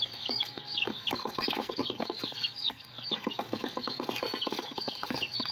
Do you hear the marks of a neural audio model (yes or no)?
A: yes